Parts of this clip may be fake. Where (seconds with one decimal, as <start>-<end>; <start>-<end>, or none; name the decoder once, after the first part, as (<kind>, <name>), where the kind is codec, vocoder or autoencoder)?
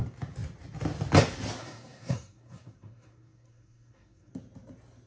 1.6-4.3 (codec, SNAC)